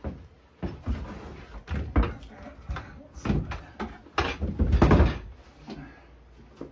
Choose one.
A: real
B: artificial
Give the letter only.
A